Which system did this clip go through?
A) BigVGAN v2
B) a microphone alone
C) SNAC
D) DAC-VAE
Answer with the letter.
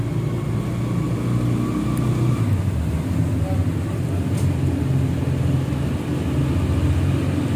B